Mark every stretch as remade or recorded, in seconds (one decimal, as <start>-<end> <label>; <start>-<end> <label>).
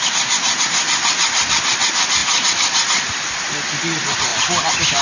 0.0-5.0 recorded